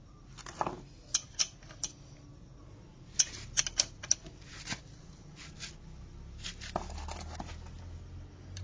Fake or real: real